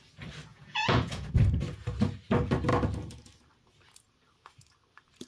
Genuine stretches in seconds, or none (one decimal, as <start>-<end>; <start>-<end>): 0.0-0.5; 1.3-5.3